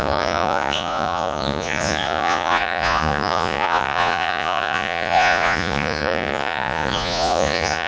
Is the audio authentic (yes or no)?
no